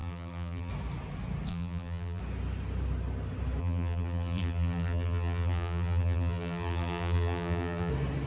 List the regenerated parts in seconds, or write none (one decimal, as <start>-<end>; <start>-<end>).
0.0-0.7; 1.5-2.2; 3.6-7.9